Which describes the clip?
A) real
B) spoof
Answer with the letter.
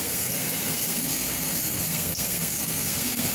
B